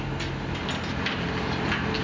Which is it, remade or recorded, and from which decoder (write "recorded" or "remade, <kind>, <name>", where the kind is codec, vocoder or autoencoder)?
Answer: recorded